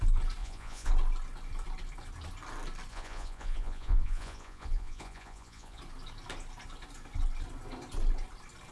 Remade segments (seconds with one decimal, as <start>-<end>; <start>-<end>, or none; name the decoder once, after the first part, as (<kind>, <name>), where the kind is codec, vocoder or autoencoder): 0.4-0.9 (vocoder, Vocos); 2.9-5.8